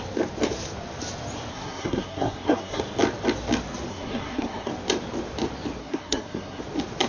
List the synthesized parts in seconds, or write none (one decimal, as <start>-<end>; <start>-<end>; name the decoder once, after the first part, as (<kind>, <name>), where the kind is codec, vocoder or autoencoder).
1.5-2.8 (codec, SNAC); 3.9-4.7; 5.8-6.6